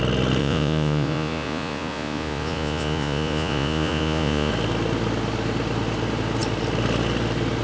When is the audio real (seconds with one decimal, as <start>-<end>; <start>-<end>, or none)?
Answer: 0.0-0.4; 4.5-7.6